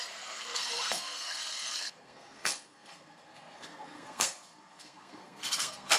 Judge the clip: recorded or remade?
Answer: remade